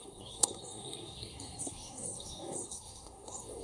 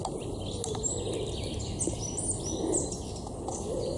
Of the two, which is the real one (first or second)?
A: second